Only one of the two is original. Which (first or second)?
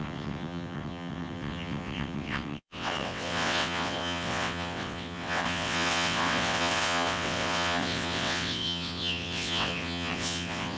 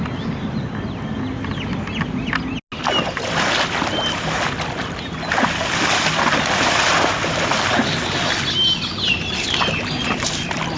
second